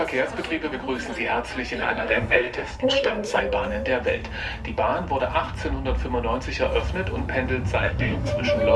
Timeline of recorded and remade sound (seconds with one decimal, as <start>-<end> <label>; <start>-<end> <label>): 0.0-1.8 recorded; 1.8-3.4 remade; 3.4-7.8 recorded; 7.8-8.3 remade; 8.3-8.8 recorded